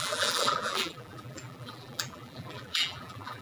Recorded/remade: remade